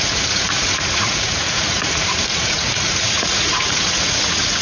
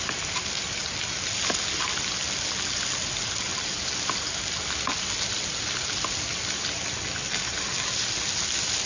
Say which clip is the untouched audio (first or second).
second